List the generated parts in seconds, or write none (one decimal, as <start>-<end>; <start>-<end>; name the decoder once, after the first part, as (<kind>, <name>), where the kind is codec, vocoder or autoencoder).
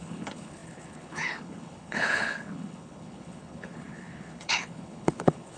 0.0-5.6 (codec, HILCodec)